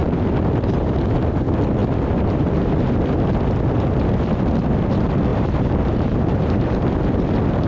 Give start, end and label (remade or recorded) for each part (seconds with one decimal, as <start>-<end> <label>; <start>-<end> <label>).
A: 0.0-1.8 recorded; 1.8-2.6 remade; 2.6-5.3 recorded; 5.3-6.9 remade; 6.9-7.7 recorded